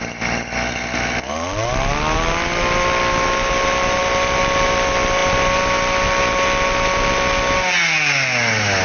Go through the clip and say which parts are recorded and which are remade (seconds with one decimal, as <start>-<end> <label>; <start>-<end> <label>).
0.0-8.8 recorded

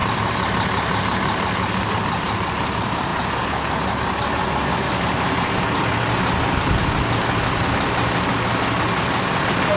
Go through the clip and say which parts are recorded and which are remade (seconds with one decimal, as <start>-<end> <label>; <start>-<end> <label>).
0.0-9.8 recorded

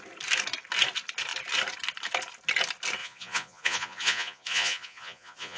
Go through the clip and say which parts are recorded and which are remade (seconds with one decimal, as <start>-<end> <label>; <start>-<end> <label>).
0.0-3.0 recorded; 3.0-5.6 remade

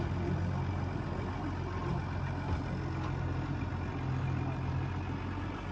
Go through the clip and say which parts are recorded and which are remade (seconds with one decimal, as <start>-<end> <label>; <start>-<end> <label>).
0.0-5.7 recorded

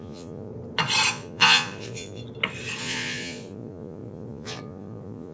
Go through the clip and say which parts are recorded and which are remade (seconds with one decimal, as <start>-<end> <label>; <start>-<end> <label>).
0.0-0.5 remade; 0.5-1.1 recorded; 1.1-2.2 remade; 2.2-2.8 recorded; 2.8-5.3 remade

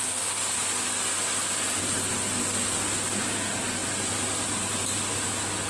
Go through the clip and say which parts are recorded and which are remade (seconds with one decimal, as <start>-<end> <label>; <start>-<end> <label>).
0.0-5.7 recorded